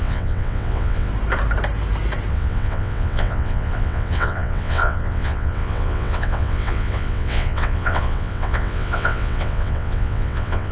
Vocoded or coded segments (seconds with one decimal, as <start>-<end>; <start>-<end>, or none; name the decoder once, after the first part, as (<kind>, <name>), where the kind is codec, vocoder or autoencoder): 0.0-1.1 (vocoder, WaveNeXt); 2.3-10.7

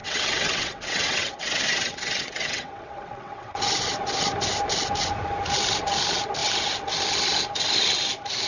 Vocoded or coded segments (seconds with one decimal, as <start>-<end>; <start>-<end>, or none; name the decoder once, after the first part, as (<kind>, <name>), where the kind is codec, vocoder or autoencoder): 0.0-3.6 (vocoder, WaveNeXt)